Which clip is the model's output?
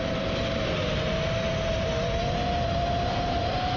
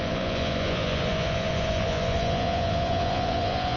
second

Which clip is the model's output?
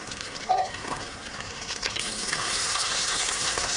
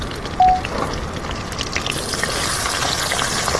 first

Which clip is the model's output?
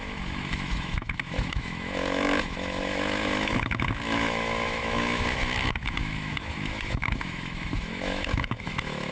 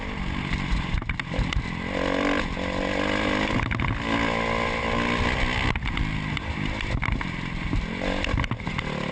first